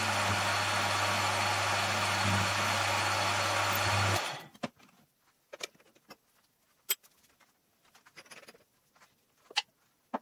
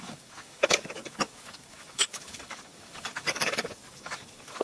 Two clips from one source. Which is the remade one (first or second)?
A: second